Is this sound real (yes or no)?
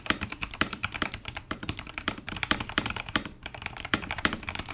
no